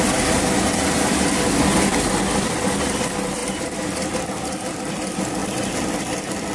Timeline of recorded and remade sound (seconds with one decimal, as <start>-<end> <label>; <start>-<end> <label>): 0.0-5.4 recorded; 5.4-6.5 remade